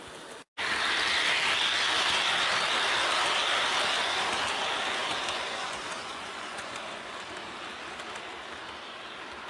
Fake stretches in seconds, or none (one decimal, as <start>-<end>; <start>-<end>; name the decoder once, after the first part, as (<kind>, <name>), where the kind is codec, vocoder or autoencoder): 5.0-7.2 (vocoder, Vocos)